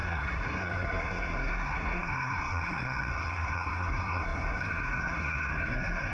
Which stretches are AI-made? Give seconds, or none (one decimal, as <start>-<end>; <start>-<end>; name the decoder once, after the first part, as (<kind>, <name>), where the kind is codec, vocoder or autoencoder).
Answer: 0.0-6.1 (codec, SNAC)